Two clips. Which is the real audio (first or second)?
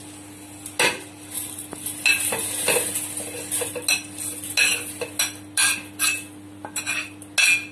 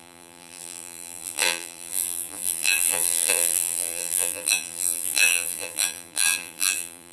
first